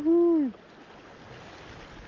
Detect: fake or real real